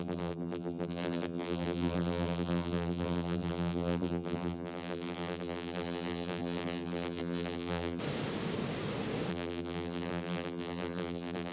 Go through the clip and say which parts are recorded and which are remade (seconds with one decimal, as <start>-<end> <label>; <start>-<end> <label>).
0.0-8.0 remade; 8.0-9.3 recorded; 9.3-11.5 remade